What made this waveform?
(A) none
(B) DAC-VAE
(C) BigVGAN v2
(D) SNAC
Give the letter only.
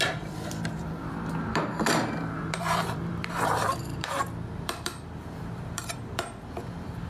C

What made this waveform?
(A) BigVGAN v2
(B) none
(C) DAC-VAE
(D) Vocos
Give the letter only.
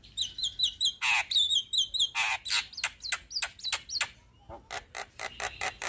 B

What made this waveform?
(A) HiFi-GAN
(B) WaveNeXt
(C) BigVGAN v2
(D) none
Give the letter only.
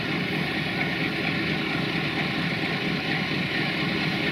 D